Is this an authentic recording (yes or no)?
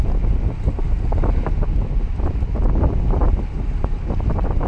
yes